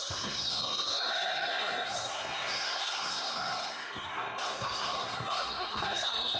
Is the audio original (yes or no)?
no